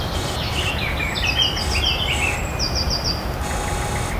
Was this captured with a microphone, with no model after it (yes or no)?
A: yes